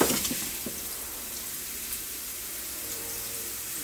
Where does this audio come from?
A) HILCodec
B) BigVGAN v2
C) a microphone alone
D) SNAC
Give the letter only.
B